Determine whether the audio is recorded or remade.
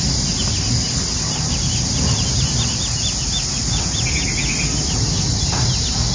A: recorded